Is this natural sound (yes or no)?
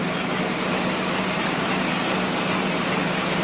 yes